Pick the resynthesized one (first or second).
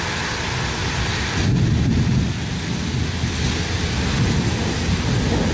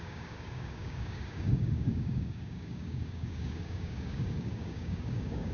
second